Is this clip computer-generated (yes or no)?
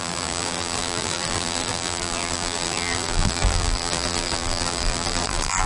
yes